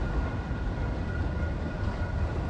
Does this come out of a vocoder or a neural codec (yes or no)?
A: yes